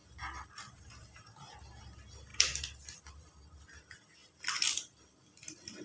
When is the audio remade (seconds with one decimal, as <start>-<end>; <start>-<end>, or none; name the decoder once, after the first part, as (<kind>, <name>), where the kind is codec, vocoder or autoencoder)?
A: 2.3-3.0 (vocoder, BigVGAN v2); 4.2-5.8